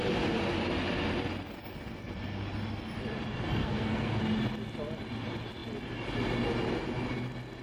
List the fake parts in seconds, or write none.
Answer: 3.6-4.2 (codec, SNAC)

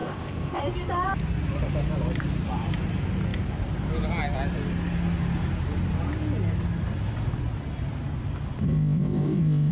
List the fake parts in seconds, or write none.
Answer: 0.0-0.6 (codec, ZipCodec); 8.6-9.7

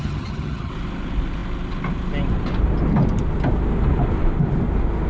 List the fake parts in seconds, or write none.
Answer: 0.0-0.7 (vocoder, HiFi-GAN)